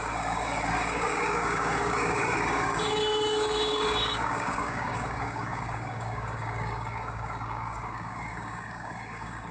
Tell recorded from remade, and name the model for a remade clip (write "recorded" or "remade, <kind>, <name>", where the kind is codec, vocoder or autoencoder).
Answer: remade, codec, DAC